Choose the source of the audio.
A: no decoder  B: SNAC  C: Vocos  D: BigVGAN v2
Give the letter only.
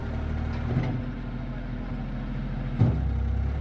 A